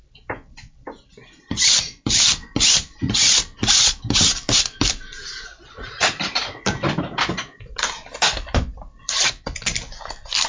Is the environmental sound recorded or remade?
remade